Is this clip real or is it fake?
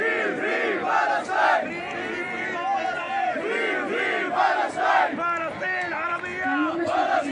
real